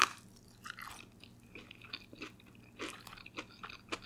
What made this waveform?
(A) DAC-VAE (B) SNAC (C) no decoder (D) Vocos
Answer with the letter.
C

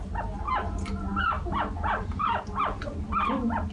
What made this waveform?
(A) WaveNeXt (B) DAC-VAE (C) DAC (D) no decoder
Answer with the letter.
D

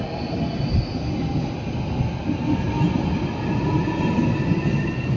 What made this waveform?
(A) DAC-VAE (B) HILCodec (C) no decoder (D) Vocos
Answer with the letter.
C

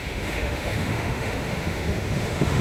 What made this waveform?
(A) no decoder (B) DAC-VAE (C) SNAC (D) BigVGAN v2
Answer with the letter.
B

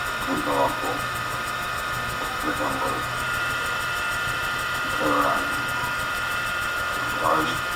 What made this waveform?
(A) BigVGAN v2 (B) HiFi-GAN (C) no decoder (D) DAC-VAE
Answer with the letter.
D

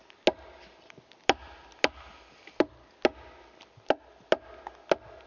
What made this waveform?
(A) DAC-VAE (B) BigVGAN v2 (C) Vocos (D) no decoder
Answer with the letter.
D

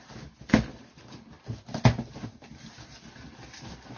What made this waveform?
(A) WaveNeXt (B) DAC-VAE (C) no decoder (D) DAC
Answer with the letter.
C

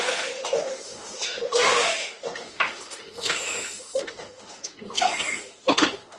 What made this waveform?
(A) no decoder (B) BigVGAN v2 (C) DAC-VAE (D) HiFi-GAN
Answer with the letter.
C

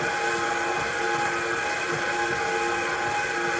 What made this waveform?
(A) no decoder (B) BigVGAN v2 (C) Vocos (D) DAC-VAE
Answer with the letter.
A